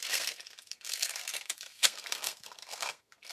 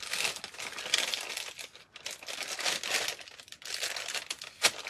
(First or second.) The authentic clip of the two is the second